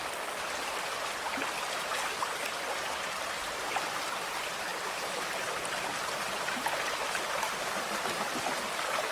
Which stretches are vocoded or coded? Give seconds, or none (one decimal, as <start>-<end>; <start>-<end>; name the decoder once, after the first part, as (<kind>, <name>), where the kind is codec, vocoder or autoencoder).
none